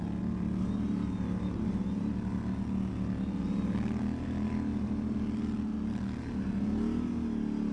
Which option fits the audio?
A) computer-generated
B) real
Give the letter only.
B